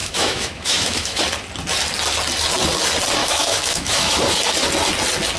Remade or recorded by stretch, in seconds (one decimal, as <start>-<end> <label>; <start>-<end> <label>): 0.0-1.2 remade; 1.2-3.2 recorded; 3.2-4.2 remade; 4.2-5.4 recorded